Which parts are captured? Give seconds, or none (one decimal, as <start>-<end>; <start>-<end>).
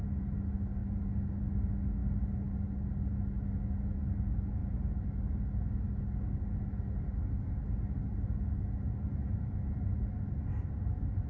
0.0-11.3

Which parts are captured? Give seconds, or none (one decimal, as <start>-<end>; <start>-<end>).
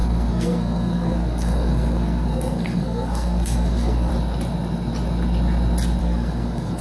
4.1-6.0